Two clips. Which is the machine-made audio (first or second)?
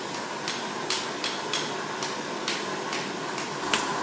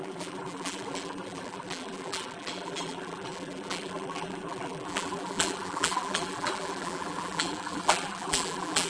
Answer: second